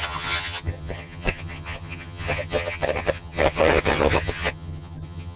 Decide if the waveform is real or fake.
fake